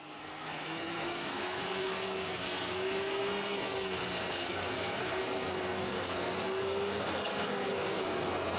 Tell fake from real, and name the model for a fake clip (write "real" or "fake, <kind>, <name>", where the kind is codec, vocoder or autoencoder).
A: fake, codec, SNAC